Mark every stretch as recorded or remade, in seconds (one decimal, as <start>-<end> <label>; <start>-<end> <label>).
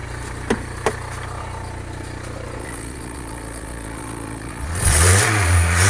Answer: 0.0-2.6 recorded; 2.6-5.9 remade